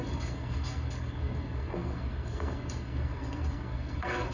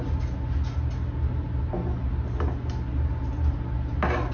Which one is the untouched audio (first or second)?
second